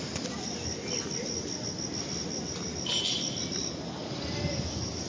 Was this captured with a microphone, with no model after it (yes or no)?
yes